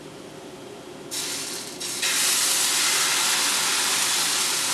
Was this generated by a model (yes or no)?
no